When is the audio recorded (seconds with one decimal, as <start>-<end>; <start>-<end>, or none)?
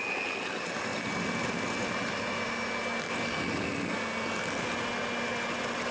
0.0-5.9